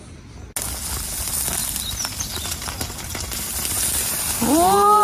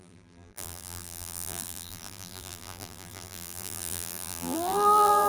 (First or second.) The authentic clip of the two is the first